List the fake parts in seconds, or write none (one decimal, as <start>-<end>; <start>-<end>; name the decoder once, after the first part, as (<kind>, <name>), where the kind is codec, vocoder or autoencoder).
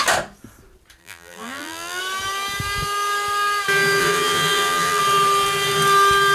1.0-2.0 (vocoder, BigVGAN v2); 4.0-5.0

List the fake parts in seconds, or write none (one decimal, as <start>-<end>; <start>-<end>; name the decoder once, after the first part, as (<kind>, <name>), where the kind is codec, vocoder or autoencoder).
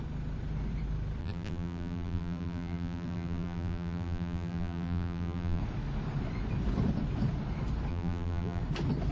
1.2-5.6 (vocoder, BigVGAN v2); 7.9-8.6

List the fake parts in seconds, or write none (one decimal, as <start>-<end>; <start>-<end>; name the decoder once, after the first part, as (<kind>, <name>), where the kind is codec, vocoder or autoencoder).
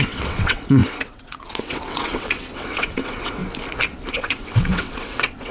0.0-3.4 (vocoder, WaveNeXt); 4.1-5.5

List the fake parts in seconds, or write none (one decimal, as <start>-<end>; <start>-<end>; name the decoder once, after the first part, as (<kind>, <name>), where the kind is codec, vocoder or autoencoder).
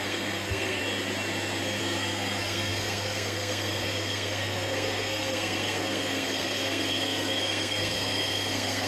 0.0-0.8 (codec, SNAC); 1.8-8.9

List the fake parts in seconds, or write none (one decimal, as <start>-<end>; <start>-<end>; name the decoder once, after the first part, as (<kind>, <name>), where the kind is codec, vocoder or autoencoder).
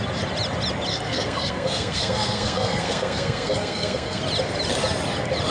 0.9-4.2 (codec, SNAC)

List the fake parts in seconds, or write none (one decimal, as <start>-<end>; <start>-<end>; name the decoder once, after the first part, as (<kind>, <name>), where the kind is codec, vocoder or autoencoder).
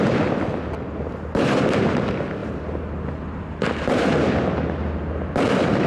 none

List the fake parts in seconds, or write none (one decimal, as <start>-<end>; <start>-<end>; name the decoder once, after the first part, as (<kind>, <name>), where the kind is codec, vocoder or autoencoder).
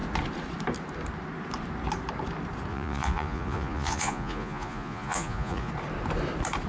2.7-5.7 (vocoder, Vocos)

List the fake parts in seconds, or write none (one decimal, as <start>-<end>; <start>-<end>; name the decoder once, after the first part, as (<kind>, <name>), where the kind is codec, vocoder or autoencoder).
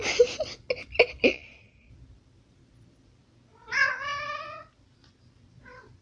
1.3-1.9 (vocoder, Vocos)